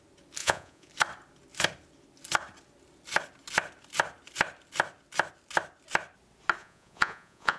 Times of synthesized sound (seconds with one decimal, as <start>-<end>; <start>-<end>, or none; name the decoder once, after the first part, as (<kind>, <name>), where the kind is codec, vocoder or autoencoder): 0.4-0.9 (vocoder, Vocos); 6.6-7.6